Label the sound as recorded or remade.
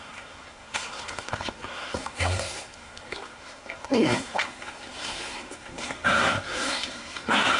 remade